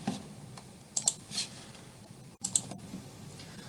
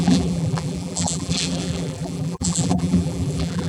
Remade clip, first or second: second